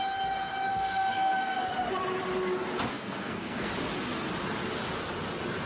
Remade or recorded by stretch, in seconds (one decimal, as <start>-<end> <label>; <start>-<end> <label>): 0.0-0.7 recorded; 0.7-1.7 remade; 1.7-2.9 recorded; 2.9-3.7 remade; 3.7-5.7 recorded